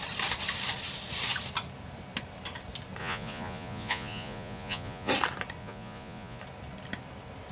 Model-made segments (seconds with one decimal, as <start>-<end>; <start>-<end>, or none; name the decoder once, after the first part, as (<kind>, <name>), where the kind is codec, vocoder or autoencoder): 3.0-5.1 (vocoder, Vocos); 5.6-6.4